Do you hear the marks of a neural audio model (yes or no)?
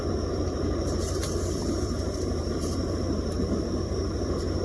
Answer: yes